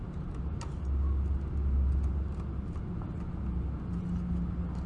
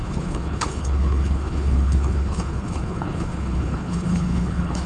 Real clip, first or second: first